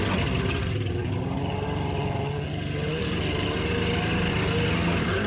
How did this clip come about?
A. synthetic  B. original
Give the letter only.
B